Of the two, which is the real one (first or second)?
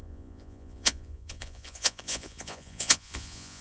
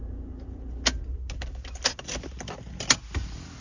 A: second